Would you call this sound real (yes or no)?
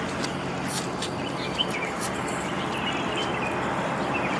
yes